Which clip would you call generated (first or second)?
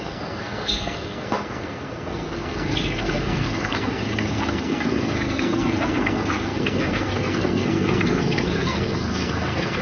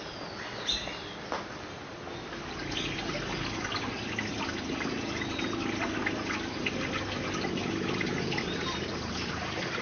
first